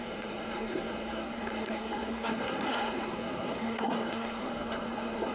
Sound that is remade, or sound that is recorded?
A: remade